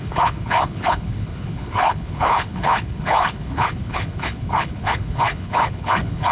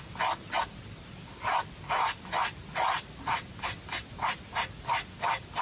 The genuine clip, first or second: second